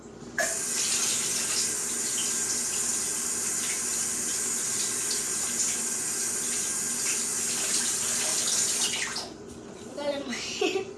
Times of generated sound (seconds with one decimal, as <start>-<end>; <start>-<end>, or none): none

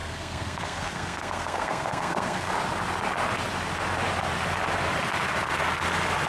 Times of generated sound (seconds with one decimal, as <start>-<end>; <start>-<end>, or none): 0.0-2.5

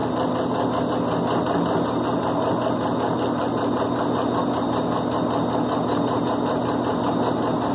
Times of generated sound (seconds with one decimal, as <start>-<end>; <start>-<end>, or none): none

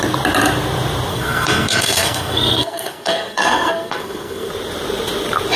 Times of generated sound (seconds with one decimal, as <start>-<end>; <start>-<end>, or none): 1.1-4.5

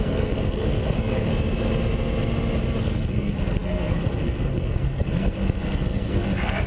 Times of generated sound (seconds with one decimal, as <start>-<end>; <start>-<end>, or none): 0.0-1.3; 2.8-6.7

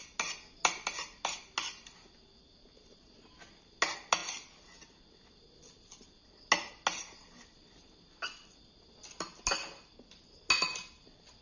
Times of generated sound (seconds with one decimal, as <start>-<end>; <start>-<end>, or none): none

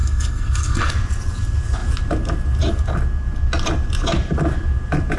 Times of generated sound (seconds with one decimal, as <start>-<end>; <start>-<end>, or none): 0.0-0.9

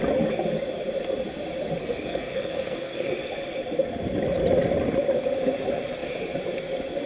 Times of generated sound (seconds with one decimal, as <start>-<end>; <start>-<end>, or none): 1.8-3.1